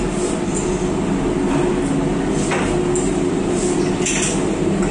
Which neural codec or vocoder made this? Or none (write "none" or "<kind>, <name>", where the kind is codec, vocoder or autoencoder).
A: none